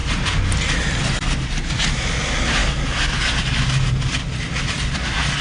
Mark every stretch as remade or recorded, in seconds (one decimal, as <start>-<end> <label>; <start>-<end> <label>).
0.0-5.4 recorded